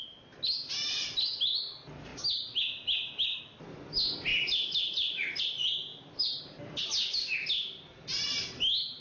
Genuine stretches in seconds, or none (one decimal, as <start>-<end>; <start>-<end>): 0.0-5.9; 6.4-9.0